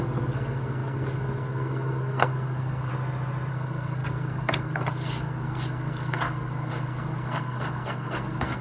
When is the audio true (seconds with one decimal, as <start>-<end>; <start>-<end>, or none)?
2.9-3.5